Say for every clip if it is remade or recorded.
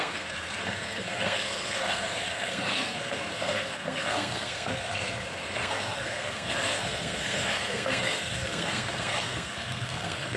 remade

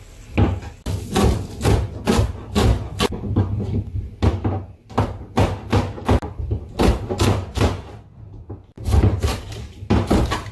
recorded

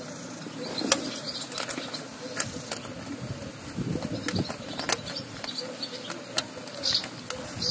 recorded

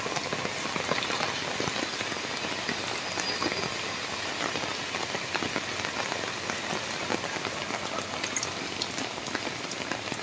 recorded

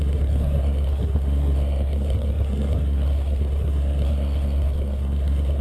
remade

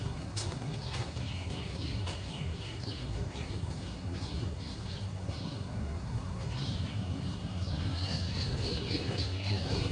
remade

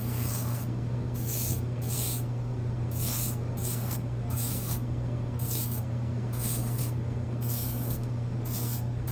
remade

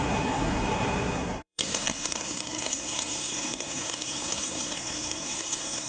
remade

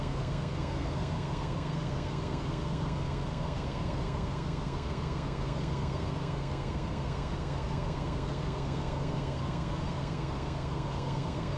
remade